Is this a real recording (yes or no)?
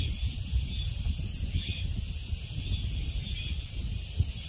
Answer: yes